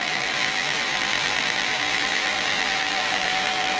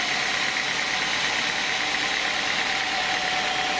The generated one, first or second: first